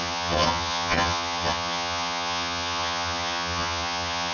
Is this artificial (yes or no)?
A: yes